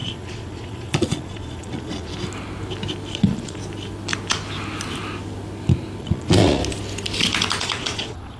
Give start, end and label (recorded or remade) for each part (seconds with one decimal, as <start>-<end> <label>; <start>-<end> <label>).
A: 0.0-2.1 remade; 2.1-3.1 recorded; 3.1-3.6 remade; 3.6-6.0 recorded; 6.0-6.6 remade; 6.6-7.6 recorded; 7.6-8.4 remade